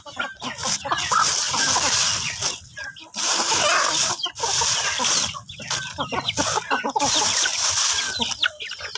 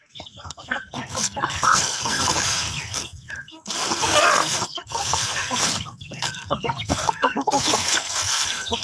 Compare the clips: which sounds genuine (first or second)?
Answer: first